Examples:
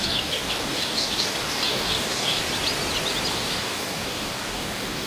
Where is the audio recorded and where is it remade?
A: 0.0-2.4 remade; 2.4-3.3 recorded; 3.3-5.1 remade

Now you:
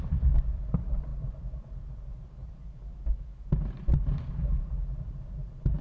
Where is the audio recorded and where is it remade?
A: 0.0-5.8 recorded